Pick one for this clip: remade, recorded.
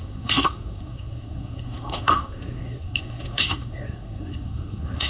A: remade